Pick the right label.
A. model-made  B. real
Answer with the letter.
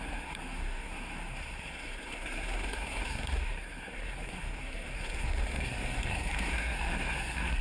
A